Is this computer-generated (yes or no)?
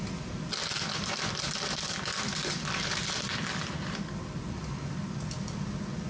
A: no